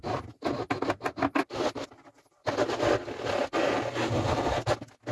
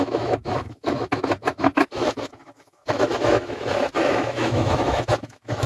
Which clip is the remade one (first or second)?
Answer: second